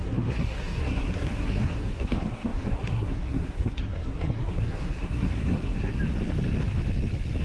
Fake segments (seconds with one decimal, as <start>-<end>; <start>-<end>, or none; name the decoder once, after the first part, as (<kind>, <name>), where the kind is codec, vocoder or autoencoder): 0.0-5.9 (codec, SNAC)